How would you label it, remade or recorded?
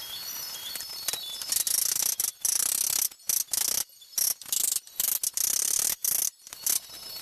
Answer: recorded